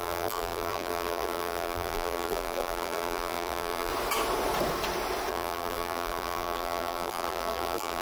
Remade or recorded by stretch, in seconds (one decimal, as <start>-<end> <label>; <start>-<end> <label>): 0.0-3.9 remade; 3.9-5.3 recorded; 5.3-8.0 remade

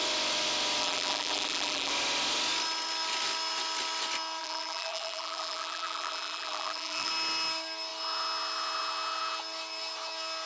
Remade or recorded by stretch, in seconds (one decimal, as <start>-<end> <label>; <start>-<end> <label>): 0.0-0.8 recorded; 0.8-1.9 remade; 1.9-4.4 recorded; 4.4-7.1 remade; 7.1-10.5 recorded